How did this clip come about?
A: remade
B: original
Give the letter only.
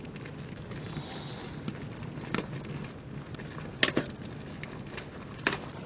B